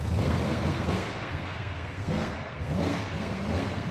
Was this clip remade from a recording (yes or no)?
yes